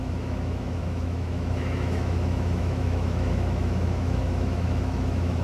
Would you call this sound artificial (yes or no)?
yes